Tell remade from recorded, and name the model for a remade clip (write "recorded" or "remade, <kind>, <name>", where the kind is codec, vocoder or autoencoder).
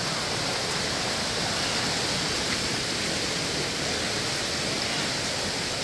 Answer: recorded